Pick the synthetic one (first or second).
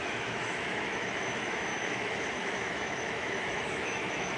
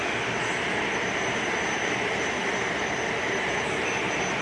first